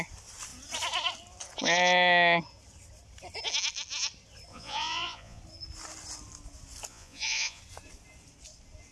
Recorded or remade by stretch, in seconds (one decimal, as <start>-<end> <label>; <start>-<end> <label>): 0.0-4.5 recorded; 4.5-5.4 remade; 5.4-6.9 recorded; 6.9-7.6 remade; 7.6-8.9 recorded